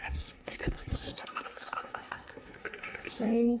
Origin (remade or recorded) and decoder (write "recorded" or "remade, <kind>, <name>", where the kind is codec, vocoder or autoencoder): remade, codec, SNAC